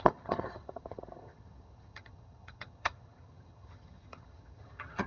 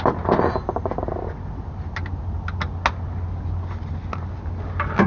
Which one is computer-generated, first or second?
first